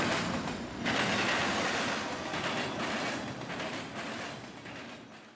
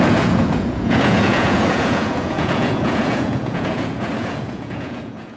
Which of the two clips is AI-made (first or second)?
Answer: second